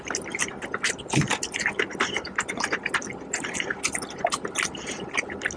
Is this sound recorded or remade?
recorded